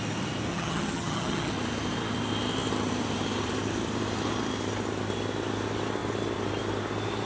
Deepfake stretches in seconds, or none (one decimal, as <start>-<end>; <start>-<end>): 0.5-1.5